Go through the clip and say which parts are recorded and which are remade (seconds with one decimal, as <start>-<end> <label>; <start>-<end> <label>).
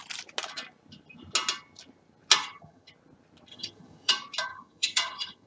0.0-2.4 recorded; 2.4-2.9 remade; 2.9-3.5 recorded; 3.5-4.1 remade; 4.1-4.5 recorded; 4.5-5.5 remade